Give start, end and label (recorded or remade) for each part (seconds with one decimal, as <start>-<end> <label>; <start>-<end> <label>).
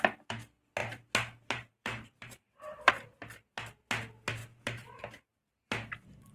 0.0-0.8 recorded; 0.8-2.9 remade; 2.9-4.4 recorded; 4.4-5.0 remade; 5.0-6.3 recorded